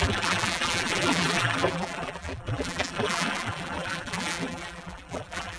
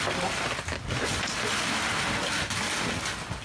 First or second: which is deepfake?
first